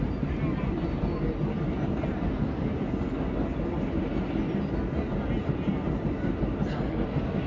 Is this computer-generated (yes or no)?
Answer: no